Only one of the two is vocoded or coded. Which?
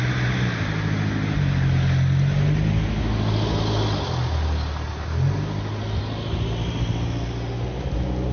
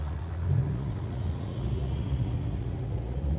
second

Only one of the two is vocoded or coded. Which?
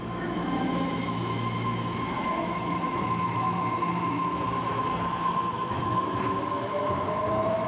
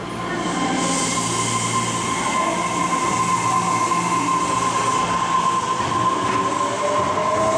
first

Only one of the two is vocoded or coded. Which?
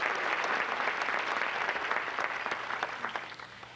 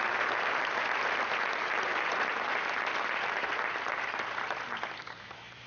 second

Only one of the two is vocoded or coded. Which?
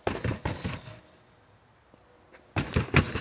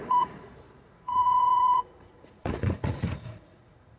second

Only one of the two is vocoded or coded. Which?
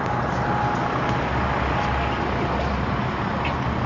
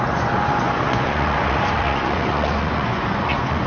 second